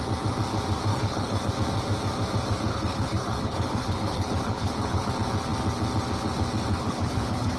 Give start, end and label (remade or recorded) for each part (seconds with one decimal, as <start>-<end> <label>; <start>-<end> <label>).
0.0-0.9 recorded; 0.9-1.5 remade; 1.5-2.7 recorded; 2.7-5.1 remade; 5.1-6.7 recorded; 6.7-7.6 remade